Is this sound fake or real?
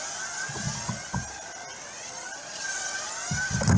real